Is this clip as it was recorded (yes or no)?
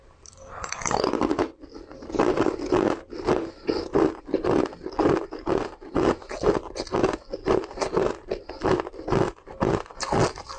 yes